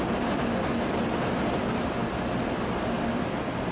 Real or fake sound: real